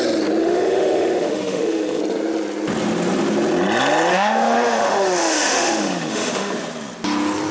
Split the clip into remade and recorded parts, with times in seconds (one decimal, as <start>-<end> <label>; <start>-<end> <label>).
0.0-0.4 recorded; 0.4-2.0 remade; 2.0-4.1 recorded; 4.1-6.5 remade; 6.5-7.5 recorded